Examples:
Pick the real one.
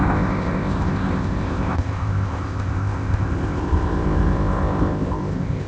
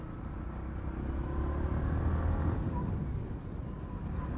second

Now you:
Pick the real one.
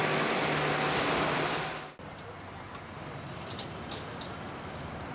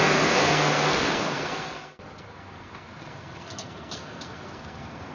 first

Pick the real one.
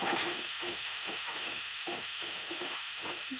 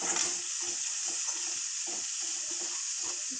second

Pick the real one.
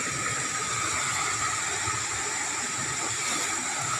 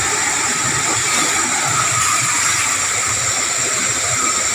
first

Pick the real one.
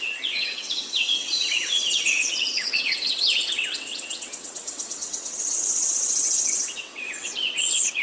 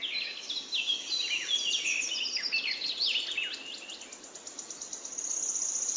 second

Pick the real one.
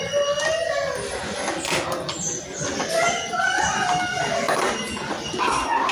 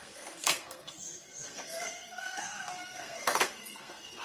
first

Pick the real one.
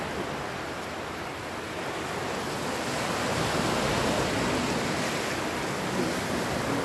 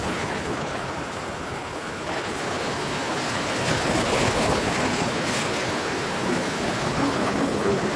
first